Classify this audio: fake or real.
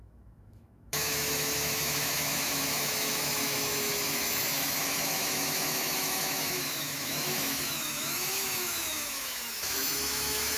fake